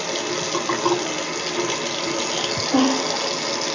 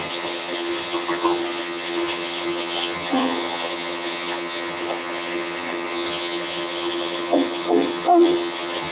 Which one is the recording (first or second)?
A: first